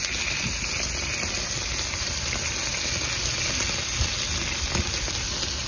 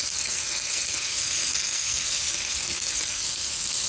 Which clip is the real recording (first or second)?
first